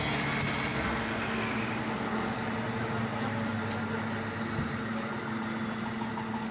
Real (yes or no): yes